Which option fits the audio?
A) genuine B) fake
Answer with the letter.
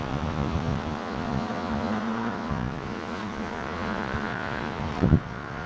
B